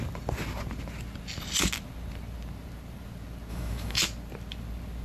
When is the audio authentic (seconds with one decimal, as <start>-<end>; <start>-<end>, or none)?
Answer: 0.0-3.5; 4.0-5.0